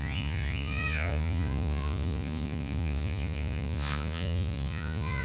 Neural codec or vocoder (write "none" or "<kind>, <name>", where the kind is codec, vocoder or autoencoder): vocoder, Vocos